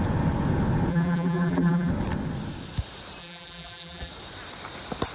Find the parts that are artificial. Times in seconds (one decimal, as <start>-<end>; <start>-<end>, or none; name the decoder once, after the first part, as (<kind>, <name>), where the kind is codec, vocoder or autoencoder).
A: 0.9-1.9 (vocoder, BigVGAN v2); 3.2-4.1